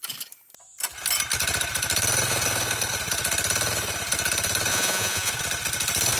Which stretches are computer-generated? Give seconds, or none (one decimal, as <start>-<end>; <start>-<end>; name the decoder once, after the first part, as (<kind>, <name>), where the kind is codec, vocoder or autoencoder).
4.7-5.3 (vocoder, Vocos)